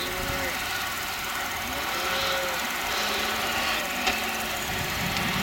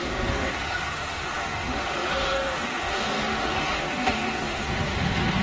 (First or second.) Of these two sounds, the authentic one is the first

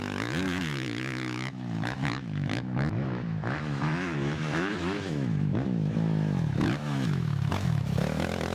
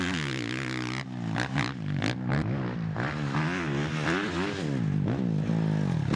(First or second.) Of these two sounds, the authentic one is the second